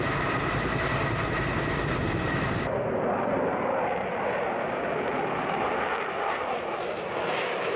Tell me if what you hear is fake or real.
real